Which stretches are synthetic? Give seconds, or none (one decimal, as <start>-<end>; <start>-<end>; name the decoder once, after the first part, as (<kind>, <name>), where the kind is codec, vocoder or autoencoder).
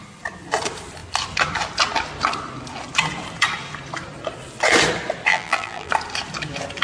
5.3-5.9 (vocoder, BigVGAN v2)